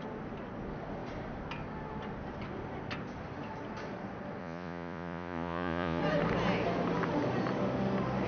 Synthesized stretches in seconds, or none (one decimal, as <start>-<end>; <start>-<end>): 4.4-6.0